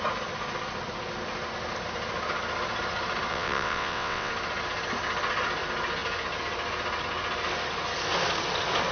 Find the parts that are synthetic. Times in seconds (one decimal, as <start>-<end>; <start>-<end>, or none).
3.3-4.3